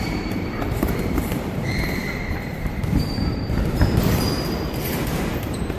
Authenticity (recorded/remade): remade